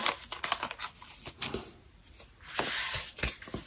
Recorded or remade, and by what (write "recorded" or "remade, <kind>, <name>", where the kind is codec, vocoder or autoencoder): recorded